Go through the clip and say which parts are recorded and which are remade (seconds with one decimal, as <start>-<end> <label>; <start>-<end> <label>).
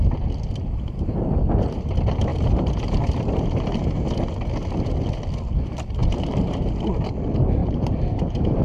0.0-2.3 recorded; 2.3-4.3 remade; 4.3-6.0 recorded; 6.0-6.7 remade; 6.7-7.6 recorded; 7.6-8.6 remade